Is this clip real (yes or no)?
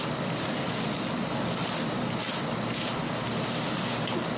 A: yes